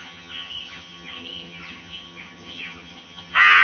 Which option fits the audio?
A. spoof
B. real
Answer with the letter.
A